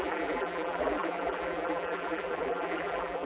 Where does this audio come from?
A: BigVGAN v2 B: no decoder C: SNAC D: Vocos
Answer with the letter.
A